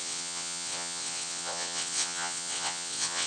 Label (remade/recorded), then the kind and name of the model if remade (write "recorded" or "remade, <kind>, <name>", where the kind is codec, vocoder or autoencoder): remade, vocoder, WaveNeXt